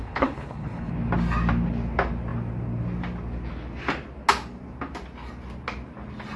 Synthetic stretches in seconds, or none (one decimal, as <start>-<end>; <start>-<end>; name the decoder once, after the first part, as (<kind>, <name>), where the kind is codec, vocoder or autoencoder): 0.0-0.9 (codec, HILCodec)